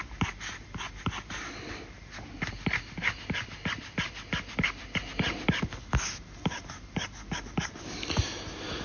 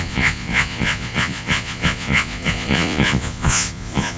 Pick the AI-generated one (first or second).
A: second